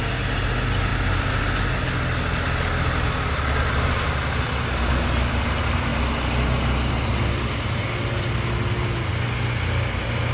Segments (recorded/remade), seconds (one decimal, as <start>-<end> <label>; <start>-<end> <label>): 0.0-0.9 recorded; 0.9-1.4 remade; 1.4-2.7 recorded; 2.7-4.9 remade; 4.9-10.3 recorded